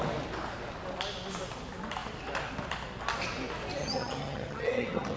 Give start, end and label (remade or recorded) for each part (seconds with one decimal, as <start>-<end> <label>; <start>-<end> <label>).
0.0-3.8 recorded; 3.8-5.2 remade